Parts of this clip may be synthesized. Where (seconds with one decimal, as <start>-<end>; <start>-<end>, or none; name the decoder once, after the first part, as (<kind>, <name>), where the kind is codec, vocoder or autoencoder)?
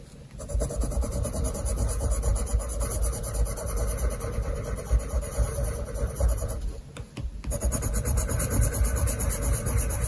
none